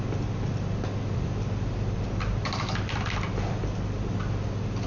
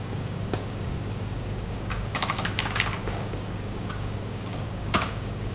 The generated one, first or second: second